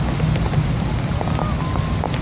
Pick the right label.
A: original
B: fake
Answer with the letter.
A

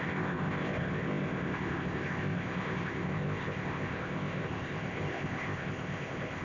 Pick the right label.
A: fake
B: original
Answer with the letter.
A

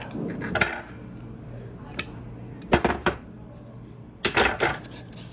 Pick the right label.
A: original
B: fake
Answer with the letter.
A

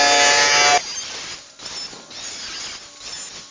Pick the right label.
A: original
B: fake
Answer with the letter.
A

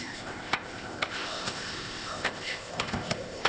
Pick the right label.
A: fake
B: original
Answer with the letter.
A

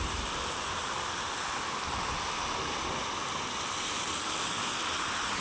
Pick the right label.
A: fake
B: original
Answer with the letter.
B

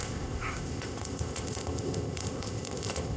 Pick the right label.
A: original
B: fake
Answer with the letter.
B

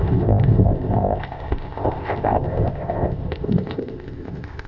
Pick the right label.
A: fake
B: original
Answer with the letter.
A